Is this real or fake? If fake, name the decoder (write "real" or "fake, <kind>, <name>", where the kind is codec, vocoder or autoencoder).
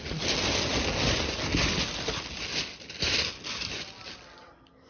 real